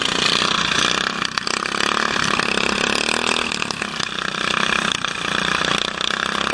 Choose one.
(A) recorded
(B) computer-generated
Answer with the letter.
A